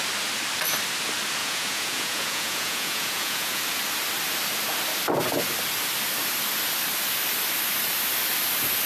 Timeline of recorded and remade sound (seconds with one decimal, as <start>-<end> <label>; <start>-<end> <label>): 0.0-1.4 recorded; 1.4-3.6 remade; 3.6-8.9 recorded